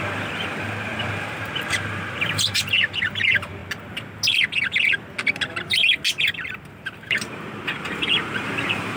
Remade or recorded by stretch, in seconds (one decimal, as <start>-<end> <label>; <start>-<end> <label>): 0.0-3.6 remade; 3.6-6.6 recorded; 6.6-9.0 remade